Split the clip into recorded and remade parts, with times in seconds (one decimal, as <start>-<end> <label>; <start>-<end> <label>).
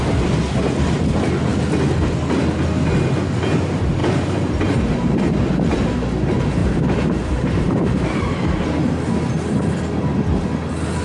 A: 0.0-4.0 recorded; 4.0-5.2 remade; 5.2-6.6 recorded; 6.6-8.8 remade; 8.8-11.0 recorded